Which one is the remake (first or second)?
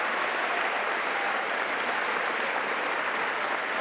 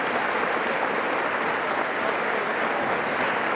first